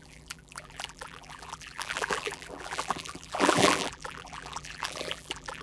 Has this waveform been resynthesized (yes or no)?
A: yes